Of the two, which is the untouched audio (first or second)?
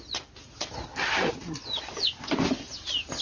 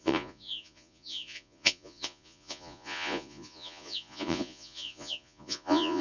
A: first